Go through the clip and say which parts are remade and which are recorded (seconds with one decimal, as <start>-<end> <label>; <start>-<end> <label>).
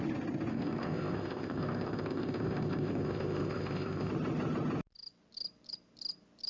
0.0-0.5 recorded; 0.5-4.1 remade; 4.1-6.5 recorded